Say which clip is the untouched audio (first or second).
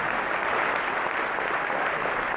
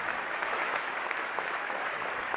first